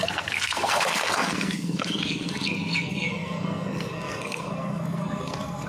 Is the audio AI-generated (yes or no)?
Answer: yes